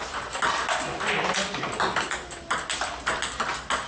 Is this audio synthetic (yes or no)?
no